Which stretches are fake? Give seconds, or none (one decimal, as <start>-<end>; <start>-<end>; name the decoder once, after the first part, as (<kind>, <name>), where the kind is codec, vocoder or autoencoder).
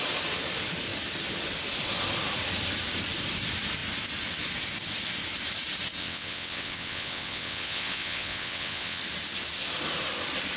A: 6.0-9.0 (vocoder, WaveNeXt)